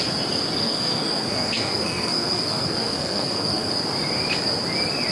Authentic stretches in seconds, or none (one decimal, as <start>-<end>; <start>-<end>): 0.0-0.6; 3.7-5.1